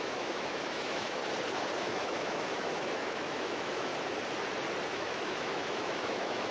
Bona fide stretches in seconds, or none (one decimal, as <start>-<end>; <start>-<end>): 1.2-1.8; 3.9-4.9